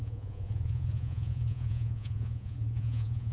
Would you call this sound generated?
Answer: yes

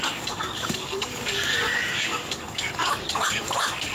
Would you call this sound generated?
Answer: yes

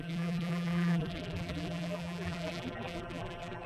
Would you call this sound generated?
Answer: yes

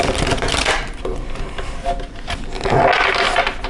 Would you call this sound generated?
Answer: no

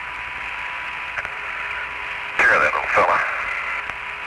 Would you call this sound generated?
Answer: no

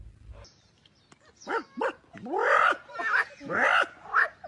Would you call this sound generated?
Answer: no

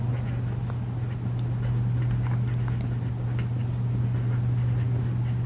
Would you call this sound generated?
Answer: no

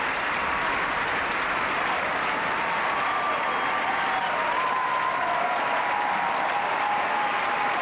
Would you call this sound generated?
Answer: yes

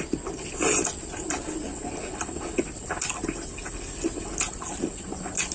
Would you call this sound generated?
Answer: no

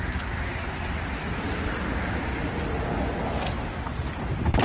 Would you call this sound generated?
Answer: no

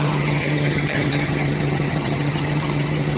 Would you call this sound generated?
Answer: yes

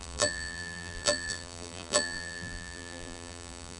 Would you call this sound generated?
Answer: yes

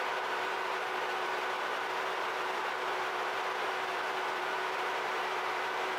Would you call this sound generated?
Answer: yes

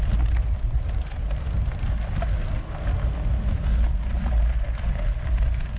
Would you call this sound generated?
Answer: no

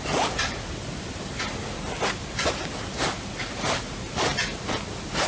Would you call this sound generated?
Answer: no